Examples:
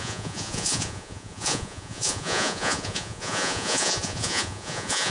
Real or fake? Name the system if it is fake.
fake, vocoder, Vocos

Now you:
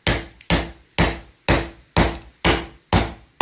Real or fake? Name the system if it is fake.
real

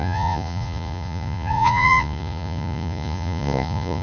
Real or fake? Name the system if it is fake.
fake, vocoder, Vocos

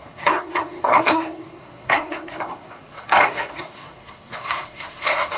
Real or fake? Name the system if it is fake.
fake, codec, SNAC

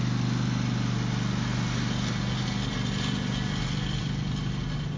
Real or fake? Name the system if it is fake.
real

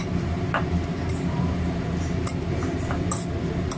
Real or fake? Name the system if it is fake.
real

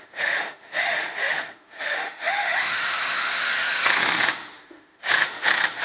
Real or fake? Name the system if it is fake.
fake, autoencoder, DAC-VAE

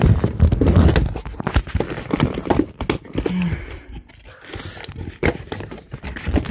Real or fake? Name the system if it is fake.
real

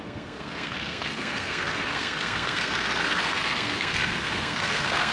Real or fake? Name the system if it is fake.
fake, codec, SNAC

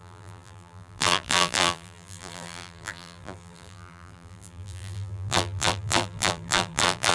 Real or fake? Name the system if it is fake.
fake, vocoder, BigVGAN v2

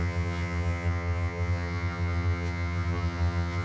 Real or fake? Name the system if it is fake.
fake, vocoder, HiFi-GAN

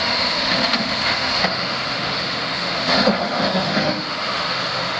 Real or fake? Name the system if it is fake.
fake, autoencoder, DAC-VAE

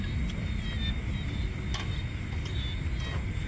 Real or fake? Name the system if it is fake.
real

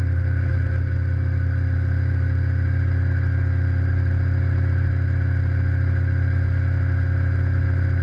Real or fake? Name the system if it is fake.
real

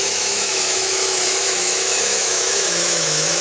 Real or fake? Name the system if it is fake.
fake, autoencoder, DAC-VAE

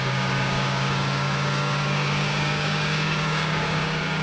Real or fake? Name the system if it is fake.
fake, codec, DAC